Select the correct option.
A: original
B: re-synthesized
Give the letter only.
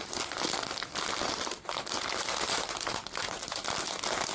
A